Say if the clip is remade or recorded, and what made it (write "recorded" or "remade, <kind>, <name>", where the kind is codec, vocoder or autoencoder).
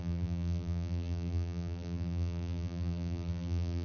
remade, vocoder, BigVGAN v2